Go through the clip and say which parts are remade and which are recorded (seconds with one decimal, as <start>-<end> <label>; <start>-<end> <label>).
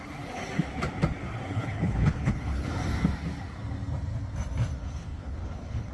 0.0-1.5 recorded; 1.5-2.7 remade; 2.7-4.8 recorded; 4.8-5.9 remade